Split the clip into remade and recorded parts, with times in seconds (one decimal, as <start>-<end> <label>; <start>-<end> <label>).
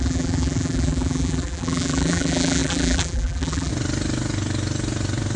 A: 0.0-3.7 remade; 3.7-5.4 recorded